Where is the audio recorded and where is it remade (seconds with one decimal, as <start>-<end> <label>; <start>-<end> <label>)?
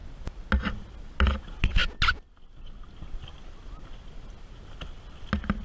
0.0-5.6 recorded